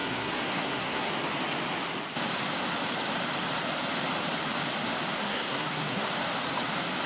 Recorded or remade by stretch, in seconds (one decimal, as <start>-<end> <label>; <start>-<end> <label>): 0.0-1.1 remade; 1.1-5.2 recorded; 5.2-6.1 remade; 6.1-7.1 recorded